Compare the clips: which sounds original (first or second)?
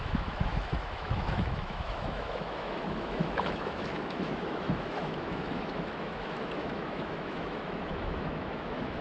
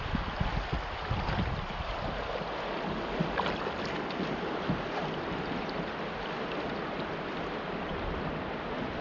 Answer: second